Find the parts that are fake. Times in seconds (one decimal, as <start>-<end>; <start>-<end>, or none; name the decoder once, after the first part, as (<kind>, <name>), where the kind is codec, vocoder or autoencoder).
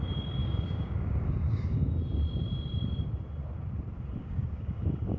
0.4-1.9 (codec, DAC); 4.2-5.2